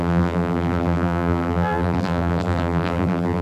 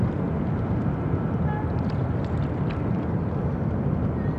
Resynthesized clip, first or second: first